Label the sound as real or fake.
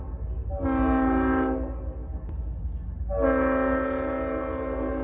real